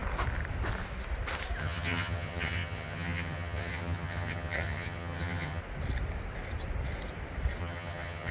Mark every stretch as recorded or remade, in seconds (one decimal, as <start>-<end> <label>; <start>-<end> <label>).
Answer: 0.0-1.6 recorded; 1.6-5.6 remade; 5.6-7.6 recorded; 7.6-8.3 remade

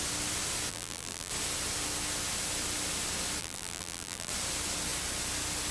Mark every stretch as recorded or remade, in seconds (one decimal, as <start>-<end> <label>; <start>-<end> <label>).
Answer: 0.0-0.7 recorded; 0.7-1.3 remade; 1.3-3.4 recorded; 3.4-4.3 remade; 4.3-5.7 recorded

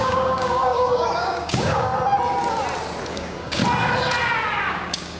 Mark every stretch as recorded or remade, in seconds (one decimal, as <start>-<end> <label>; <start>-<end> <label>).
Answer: 0.0-1.9 remade; 1.9-3.1 recorded; 3.1-3.6 remade; 3.6-4.7 recorded; 4.7-5.2 remade

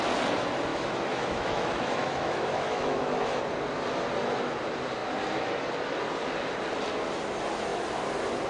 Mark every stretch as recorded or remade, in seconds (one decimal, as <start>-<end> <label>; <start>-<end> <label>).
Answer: 0.0-0.7 recorded; 0.7-3.4 remade; 3.4-8.5 recorded